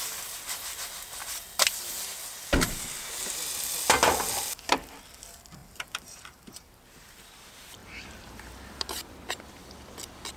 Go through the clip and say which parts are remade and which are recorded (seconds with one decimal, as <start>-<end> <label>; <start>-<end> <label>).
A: 0.0-5.6 recorded; 5.6-6.8 remade; 6.8-7.8 recorded; 7.8-9.3 remade; 9.3-10.4 recorded